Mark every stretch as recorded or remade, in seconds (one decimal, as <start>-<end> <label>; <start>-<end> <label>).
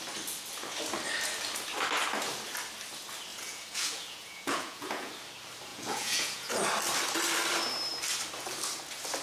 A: 0.0-3.3 recorded; 3.3-5.1 remade; 5.1-5.7 recorded; 5.7-6.5 remade; 6.5-9.2 recorded